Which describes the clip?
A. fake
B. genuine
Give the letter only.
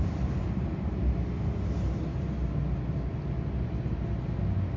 B